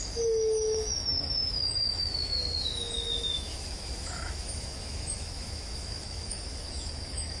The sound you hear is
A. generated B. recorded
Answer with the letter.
A